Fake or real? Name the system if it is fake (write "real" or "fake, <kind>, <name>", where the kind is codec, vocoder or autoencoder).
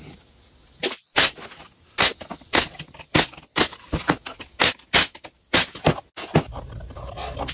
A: real